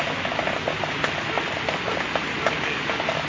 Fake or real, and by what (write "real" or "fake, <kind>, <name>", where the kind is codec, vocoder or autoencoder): real